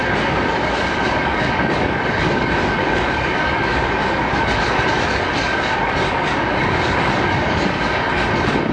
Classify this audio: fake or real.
fake